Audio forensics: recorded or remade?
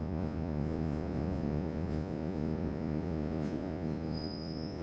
remade